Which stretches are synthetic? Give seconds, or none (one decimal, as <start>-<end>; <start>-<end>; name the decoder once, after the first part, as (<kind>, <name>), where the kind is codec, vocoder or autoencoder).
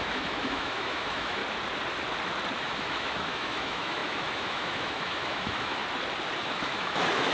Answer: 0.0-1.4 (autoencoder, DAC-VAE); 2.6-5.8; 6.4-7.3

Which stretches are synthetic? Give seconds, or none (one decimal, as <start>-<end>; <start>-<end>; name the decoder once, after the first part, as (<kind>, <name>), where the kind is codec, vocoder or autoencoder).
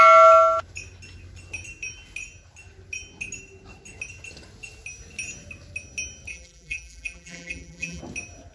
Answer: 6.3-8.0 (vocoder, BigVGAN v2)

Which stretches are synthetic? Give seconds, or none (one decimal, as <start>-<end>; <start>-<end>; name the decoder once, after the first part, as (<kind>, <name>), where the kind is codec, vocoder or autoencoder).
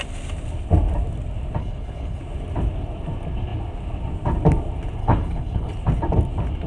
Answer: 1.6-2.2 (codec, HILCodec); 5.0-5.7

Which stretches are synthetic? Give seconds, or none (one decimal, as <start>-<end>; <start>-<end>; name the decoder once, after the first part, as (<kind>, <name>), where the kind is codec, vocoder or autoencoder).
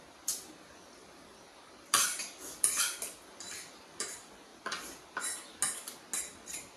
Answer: 0.0-4.5 (vocoder, BigVGAN v2); 6.2-6.8